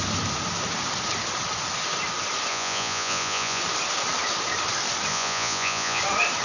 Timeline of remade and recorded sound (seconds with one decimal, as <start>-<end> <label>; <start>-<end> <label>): 0.0-2.5 recorded; 2.5-3.6 remade; 3.6-5.1 recorded; 5.1-6.0 remade; 6.0-6.4 recorded